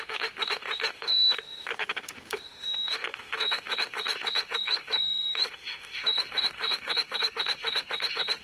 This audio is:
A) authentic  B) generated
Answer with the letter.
B